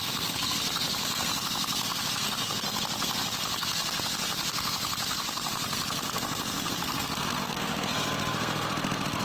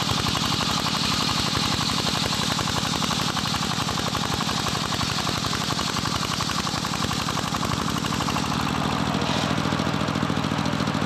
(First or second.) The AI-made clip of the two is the first